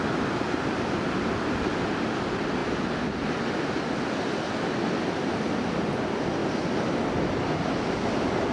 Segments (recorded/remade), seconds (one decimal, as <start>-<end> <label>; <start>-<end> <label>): 0.0-8.5 recorded